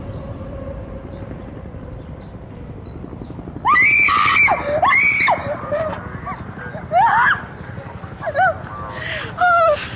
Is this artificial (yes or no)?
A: no